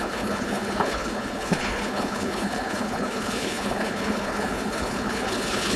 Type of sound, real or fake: fake